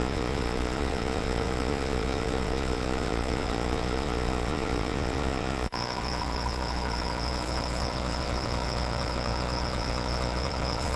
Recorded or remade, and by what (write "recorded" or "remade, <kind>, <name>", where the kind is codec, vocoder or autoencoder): remade, vocoder, Vocos